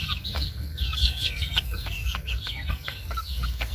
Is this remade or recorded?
remade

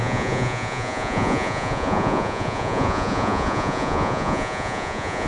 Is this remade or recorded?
remade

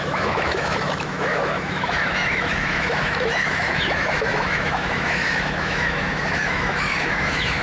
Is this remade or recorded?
remade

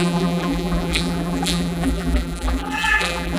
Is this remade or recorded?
remade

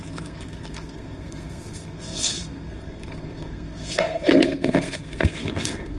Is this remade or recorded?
remade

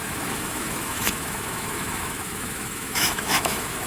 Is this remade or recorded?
remade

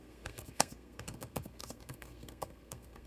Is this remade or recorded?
remade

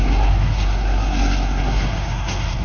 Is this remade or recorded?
remade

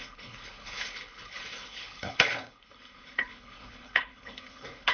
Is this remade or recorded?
remade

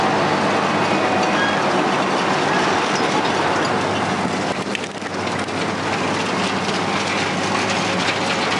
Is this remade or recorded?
recorded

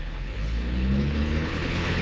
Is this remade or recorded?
remade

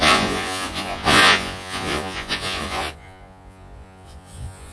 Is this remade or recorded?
remade